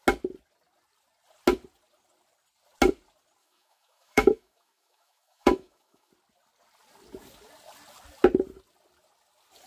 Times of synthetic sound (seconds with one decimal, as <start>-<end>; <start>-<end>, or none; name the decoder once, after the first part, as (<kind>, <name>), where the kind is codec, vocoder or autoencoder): 3.4-6.1 (autoencoder, DAC-VAE)